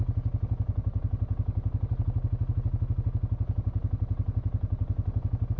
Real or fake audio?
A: real